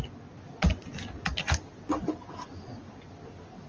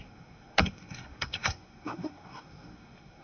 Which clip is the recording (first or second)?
first